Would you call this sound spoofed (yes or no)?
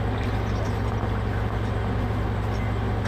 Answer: no